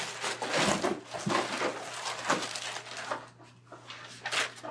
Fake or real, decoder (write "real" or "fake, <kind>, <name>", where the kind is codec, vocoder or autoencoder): real